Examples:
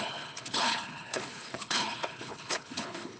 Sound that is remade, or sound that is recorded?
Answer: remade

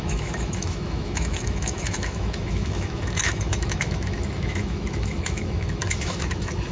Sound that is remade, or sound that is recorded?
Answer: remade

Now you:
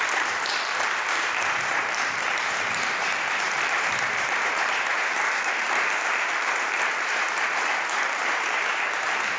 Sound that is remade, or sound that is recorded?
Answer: remade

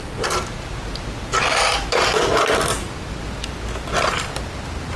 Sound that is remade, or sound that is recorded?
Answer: recorded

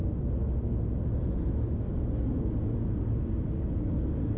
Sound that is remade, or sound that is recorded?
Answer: recorded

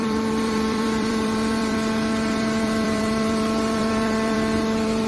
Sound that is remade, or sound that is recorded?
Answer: remade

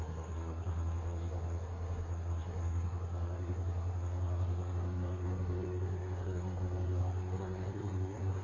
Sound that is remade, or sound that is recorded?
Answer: remade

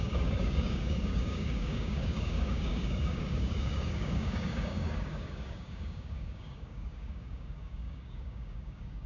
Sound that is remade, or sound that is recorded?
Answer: remade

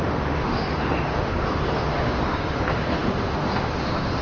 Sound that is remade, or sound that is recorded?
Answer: remade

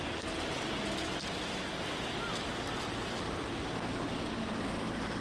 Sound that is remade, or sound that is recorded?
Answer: recorded